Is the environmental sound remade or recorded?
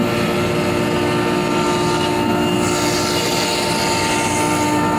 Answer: recorded